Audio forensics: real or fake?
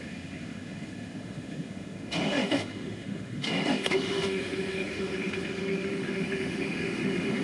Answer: fake